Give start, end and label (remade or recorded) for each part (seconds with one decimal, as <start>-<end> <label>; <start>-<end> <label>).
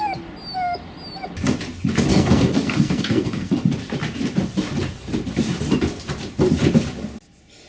0.0-2.1 recorded; 2.1-3.5 remade; 3.5-7.7 recorded